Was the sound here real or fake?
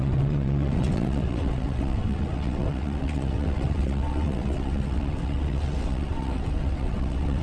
fake